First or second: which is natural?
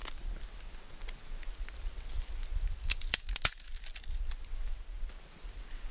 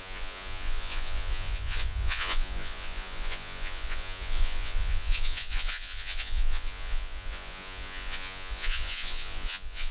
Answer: first